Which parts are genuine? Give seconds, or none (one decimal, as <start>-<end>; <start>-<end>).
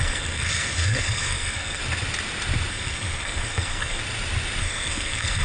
1.8-2.7; 4.0-4.6